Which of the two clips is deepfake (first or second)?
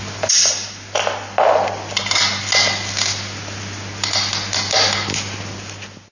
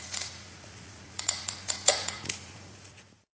second